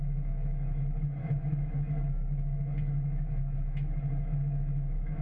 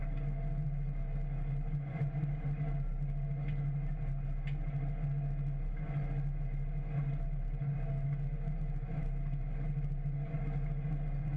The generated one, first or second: first